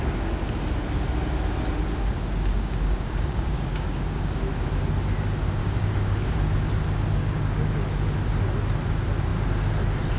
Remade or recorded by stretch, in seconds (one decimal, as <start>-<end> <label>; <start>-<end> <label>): 0.0-2.5 recorded; 2.5-4.3 remade; 4.3-5.6 recorded; 5.6-6.3 remade; 6.3-7.2 recorded; 7.2-7.7 remade; 7.7-10.2 recorded